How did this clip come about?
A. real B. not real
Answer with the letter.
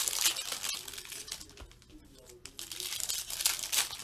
A